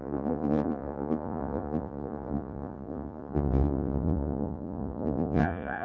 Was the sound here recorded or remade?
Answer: remade